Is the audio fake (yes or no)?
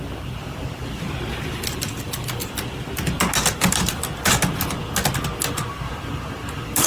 no